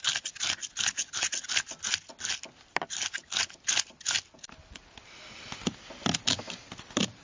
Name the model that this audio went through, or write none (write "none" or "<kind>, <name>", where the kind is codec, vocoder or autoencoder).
none